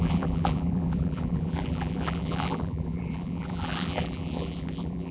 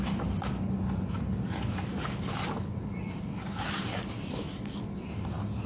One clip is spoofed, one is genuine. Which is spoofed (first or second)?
first